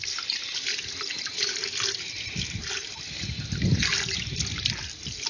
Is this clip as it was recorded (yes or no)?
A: yes